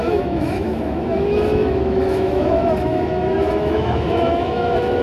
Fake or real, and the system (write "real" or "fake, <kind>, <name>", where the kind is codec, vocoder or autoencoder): fake, autoencoder, DAC-VAE